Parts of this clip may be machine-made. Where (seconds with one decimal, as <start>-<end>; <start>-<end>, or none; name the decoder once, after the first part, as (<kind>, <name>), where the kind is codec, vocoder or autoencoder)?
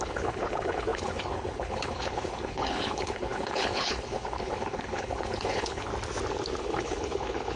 0.0-5.9 (codec, HILCodec); 6.6-7.6